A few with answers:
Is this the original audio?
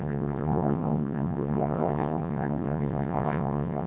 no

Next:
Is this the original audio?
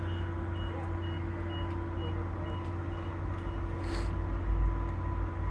yes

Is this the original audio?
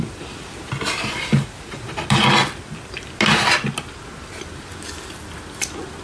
yes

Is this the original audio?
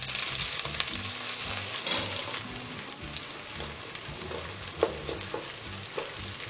yes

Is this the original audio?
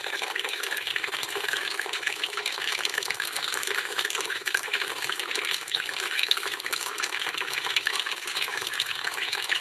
no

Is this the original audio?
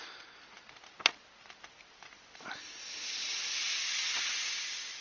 yes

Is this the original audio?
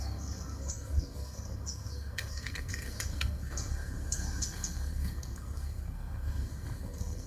no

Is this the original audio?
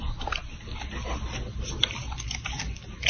yes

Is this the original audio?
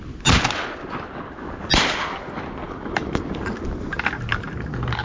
yes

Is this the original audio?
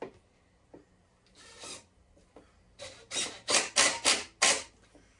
yes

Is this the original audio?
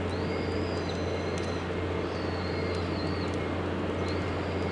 yes